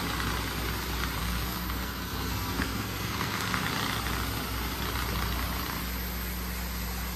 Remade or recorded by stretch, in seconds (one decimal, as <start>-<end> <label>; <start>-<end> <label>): 0.0-1.2 recorded; 1.2-3.6 remade; 3.6-7.2 recorded